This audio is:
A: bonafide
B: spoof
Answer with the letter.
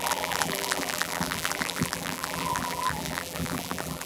B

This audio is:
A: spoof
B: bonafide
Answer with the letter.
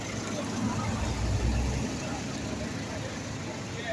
B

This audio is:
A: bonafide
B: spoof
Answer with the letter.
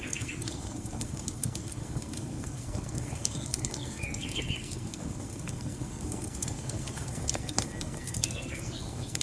B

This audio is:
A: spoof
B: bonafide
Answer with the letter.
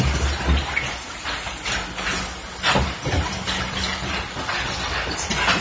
B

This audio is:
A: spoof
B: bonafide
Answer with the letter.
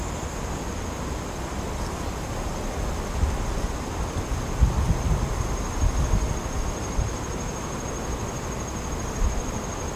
B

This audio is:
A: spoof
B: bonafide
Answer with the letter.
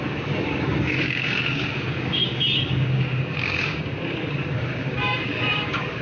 A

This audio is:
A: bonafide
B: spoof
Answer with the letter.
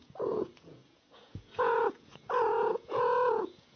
B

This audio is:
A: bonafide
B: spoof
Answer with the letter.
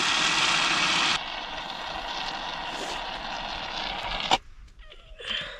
A